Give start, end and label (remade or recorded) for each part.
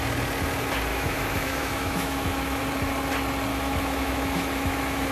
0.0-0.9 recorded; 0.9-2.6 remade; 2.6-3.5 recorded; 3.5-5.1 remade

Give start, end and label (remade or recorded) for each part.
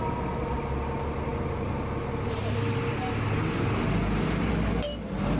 0.0-5.4 recorded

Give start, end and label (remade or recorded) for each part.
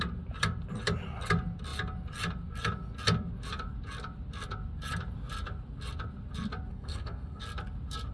0.0-6.7 recorded; 6.7-7.4 remade; 7.4-8.1 recorded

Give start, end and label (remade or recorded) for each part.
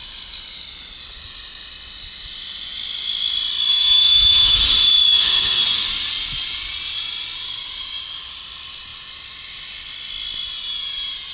0.0-3.7 recorded; 3.7-4.6 remade; 4.6-5.1 recorded; 5.1-5.6 remade; 5.6-11.3 recorded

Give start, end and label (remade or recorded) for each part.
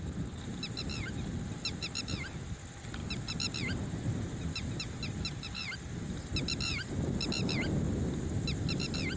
0.0-9.2 recorded